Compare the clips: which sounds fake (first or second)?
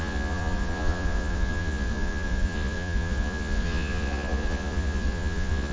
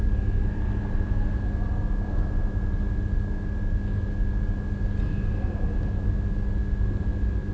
first